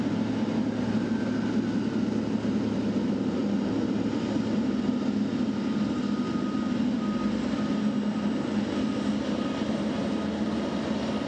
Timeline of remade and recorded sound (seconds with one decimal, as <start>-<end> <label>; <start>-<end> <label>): 0.0-11.3 recorded